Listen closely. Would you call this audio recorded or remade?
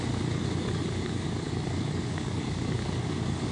remade